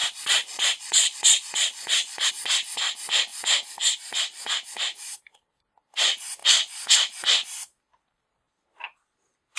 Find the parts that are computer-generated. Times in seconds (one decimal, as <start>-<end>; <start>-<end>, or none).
0.0-2.3